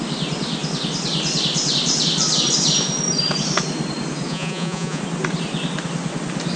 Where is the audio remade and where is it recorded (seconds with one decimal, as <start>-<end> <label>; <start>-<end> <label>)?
0.0-4.3 recorded; 4.3-5.0 remade; 5.0-6.6 recorded